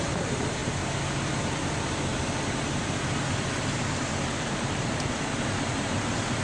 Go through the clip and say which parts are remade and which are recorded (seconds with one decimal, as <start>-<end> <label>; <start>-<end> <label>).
0.0-0.6 remade; 0.6-1.7 recorded; 1.7-6.4 remade